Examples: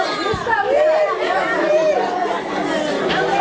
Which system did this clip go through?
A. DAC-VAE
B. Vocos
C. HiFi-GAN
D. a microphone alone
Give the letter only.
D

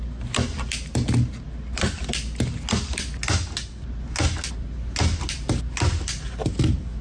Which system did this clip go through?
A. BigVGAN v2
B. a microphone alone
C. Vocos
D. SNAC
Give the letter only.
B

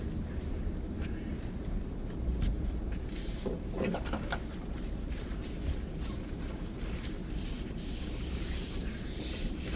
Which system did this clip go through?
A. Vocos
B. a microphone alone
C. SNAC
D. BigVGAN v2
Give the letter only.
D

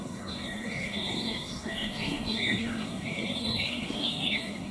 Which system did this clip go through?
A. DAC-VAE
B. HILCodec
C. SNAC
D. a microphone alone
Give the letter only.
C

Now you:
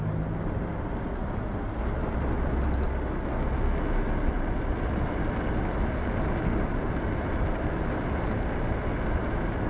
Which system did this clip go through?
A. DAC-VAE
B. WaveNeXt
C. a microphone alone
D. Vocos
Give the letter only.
C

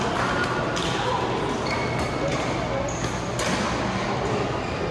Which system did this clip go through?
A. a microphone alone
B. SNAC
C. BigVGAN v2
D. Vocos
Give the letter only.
A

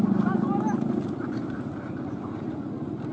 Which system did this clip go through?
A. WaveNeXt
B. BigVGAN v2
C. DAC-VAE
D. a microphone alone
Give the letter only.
D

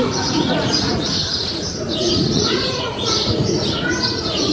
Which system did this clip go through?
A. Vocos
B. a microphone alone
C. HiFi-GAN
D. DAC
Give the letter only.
A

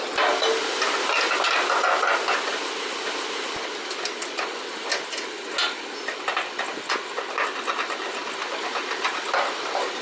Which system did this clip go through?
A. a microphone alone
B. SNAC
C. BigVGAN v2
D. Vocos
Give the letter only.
A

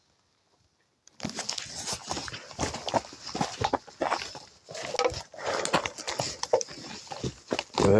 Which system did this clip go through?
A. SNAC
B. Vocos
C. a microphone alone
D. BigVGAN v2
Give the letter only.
C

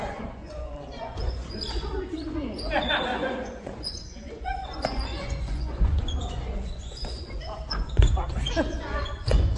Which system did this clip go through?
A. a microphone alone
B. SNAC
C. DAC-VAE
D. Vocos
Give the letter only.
D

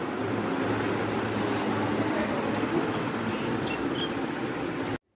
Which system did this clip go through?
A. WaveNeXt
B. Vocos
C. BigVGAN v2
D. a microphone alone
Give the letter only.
D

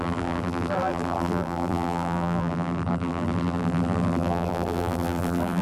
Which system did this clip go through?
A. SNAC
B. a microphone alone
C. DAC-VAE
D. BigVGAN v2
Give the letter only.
D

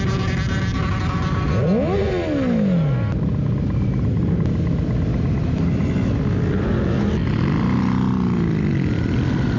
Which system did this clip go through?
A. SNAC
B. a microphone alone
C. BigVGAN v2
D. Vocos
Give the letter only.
B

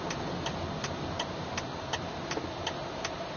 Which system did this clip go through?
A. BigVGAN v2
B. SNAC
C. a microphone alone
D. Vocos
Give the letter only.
C